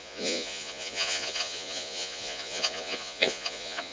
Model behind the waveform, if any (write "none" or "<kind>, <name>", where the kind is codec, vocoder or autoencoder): vocoder, Vocos